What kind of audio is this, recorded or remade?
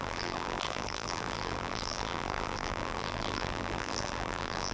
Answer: remade